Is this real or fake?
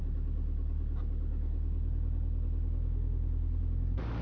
real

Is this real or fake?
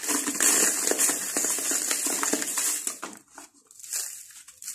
real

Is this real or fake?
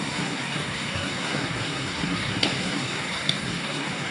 fake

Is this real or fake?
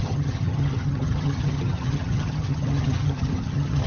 fake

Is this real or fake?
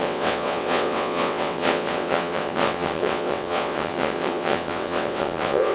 fake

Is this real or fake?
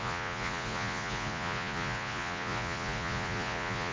fake